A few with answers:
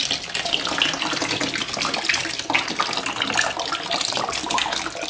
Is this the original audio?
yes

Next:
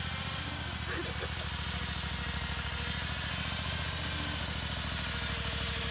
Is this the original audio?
yes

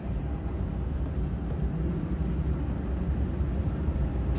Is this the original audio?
yes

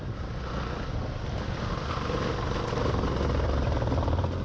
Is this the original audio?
yes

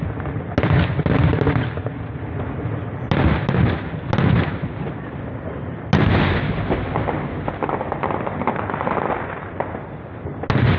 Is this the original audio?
yes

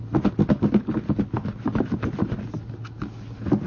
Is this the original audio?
yes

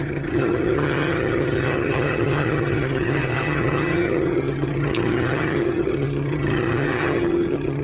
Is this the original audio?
no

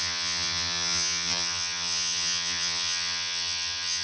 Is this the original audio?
no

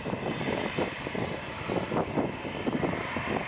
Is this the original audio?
yes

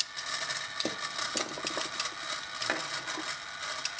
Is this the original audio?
yes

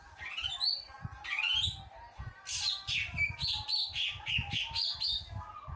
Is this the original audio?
yes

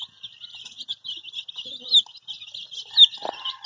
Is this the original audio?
yes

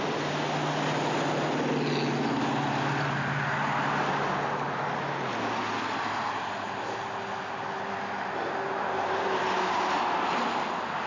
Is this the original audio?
yes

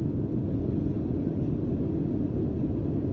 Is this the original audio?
yes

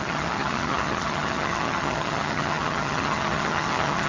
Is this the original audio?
no